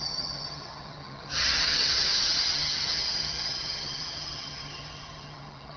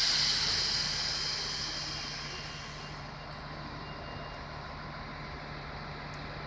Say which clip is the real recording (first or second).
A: second